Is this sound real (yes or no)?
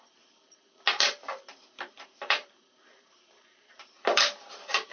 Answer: no